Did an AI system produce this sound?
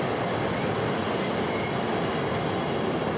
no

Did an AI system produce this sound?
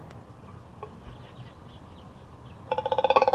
no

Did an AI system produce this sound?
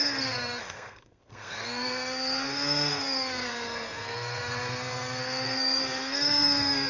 yes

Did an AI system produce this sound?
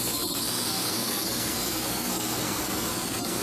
yes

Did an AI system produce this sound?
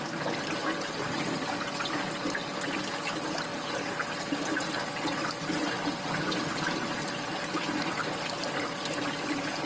yes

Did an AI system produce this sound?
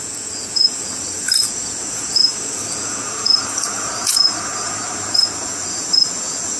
yes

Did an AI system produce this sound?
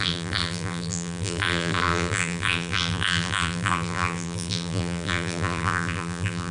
yes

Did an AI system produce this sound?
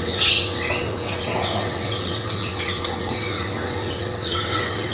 yes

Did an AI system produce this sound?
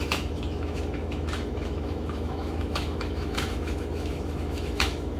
yes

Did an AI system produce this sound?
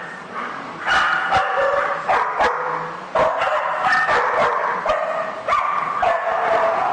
no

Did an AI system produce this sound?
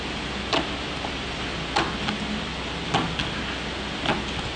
no